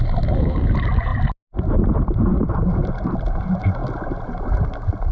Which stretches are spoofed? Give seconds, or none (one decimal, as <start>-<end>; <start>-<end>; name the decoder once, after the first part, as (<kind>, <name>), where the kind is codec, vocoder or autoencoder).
none